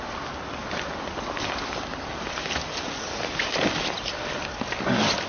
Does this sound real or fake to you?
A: real